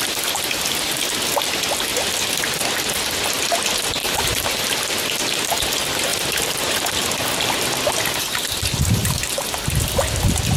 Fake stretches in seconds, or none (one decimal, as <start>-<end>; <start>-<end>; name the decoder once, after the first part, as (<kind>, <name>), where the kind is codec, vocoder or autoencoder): 4.0-4.6 (vocoder, BigVGAN v2); 6.1-7.1; 9.0-10.0